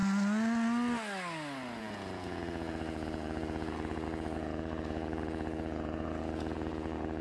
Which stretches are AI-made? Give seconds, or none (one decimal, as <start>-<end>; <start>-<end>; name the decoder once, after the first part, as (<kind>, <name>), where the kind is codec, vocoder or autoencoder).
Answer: 1.8-7.2 (vocoder, Vocos)